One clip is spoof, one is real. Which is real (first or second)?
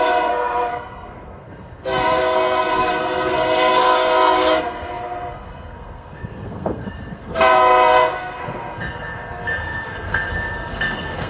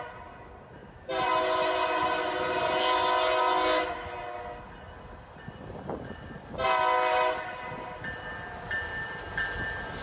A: second